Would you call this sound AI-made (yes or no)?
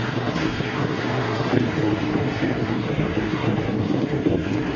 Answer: yes